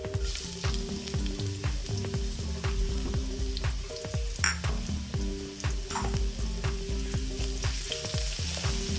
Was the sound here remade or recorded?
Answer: recorded